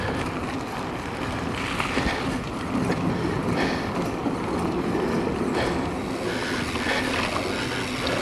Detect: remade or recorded recorded